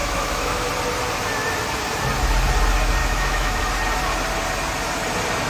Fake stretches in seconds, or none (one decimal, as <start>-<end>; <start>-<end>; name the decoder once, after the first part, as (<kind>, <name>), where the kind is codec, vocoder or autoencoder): 0.0-0.7 (autoencoder, DAC-VAE); 3.0-3.6